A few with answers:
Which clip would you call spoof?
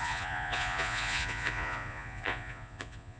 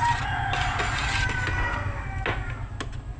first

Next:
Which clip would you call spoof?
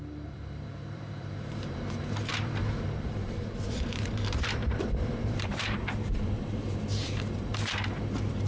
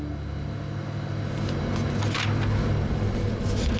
first